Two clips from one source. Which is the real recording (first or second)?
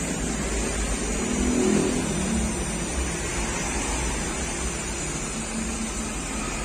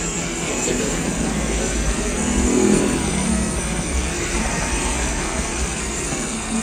first